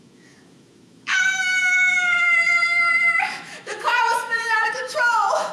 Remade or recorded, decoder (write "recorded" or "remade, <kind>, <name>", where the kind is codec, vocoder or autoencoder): remade, autoencoder, DAC-VAE